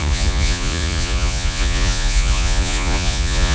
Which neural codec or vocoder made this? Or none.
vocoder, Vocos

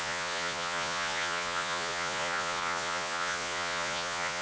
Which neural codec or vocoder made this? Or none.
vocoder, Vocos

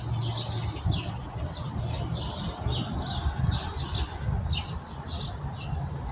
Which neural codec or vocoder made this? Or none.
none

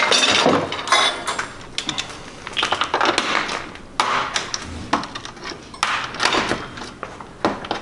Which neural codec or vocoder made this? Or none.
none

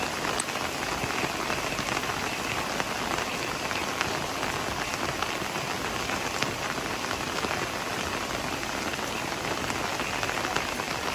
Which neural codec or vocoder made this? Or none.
none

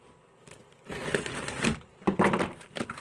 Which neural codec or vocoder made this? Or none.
none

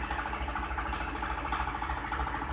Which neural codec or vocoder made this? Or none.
none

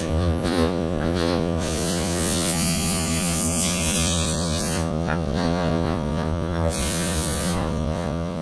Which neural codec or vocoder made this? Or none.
vocoder, Vocos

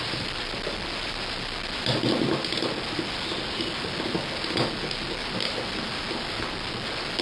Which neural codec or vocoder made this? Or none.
none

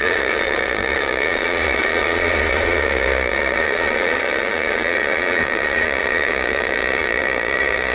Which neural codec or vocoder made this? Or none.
vocoder, Vocos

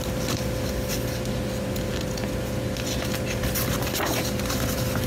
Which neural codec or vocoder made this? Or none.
none